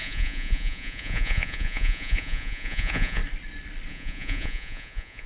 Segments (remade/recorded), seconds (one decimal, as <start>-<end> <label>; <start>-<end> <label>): 0.0-3.2 remade; 3.2-3.9 recorded; 3.9-5.3 remade